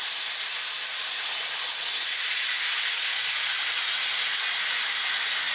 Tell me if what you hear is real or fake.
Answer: real